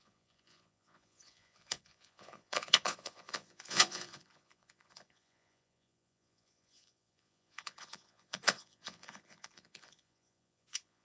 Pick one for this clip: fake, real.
fake